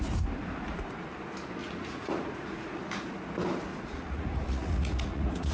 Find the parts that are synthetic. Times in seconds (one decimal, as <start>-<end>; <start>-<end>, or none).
1.6-2.8; 3.7-5.5